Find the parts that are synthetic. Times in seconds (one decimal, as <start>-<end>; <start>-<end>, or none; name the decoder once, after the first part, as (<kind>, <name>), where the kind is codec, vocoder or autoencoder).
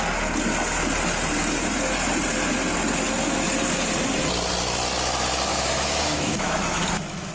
5.5-7.3 (autoencoder, DAC-VAE)